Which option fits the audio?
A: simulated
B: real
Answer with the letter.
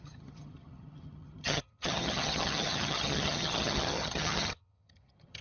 A